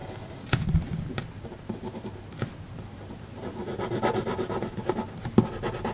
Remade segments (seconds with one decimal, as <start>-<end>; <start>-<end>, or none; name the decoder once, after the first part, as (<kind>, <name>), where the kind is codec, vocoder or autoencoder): none